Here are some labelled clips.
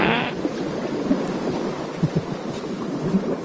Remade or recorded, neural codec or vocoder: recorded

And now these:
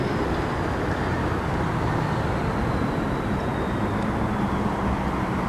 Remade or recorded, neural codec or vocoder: recorded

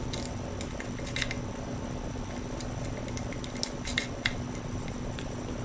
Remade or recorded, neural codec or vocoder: recorded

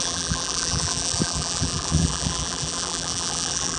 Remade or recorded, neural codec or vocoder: remade, vocoder, BigVGAN v2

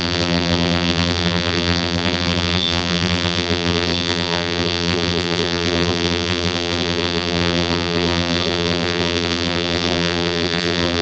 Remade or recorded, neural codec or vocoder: remade, vocoder, BigVGAN v2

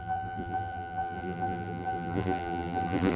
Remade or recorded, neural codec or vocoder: remade, vocoder, BigVGAN v2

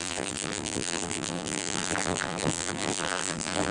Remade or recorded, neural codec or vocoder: remade, vocoder, BigVGAN v2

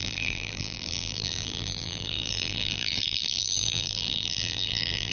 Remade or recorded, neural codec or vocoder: remade, vocoder, BigVGAN v2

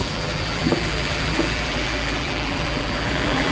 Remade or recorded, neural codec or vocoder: remade, vocoder, BigVGAN v2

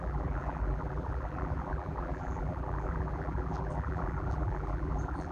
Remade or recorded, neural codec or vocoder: remade, vocoder, BigVGAN v2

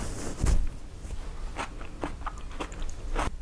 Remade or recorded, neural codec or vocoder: recorded